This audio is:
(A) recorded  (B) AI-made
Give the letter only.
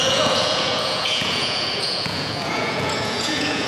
B